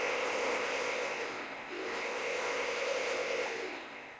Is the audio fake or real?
fake